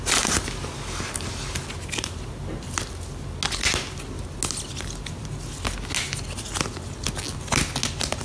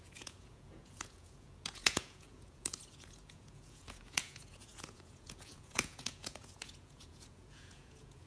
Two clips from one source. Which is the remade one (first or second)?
second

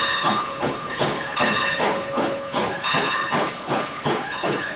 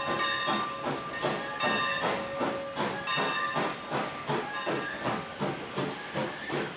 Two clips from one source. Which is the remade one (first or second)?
first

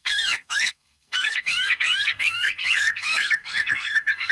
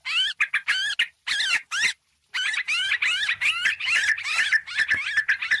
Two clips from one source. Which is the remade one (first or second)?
first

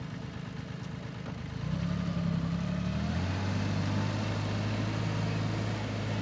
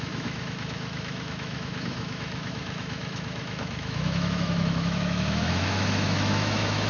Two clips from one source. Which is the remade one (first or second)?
second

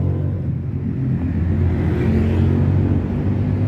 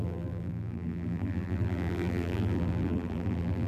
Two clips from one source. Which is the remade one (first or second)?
second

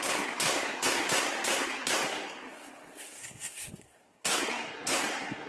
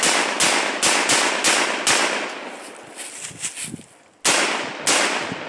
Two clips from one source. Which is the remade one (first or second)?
first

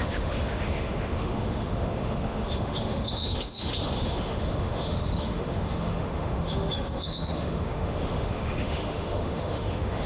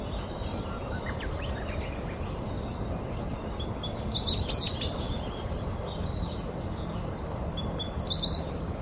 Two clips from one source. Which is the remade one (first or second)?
first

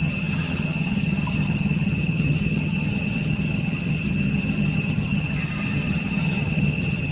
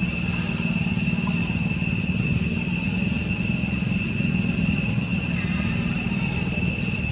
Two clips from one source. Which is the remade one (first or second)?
first